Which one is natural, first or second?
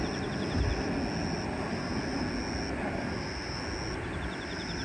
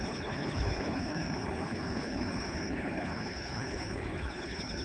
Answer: first